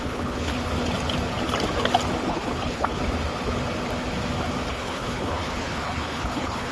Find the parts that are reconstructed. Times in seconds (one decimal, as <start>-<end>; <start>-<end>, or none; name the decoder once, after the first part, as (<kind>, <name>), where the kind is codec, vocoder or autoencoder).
0.0-0.5 (codec, HILCodec); 2.3-3.0; 4.7-6.7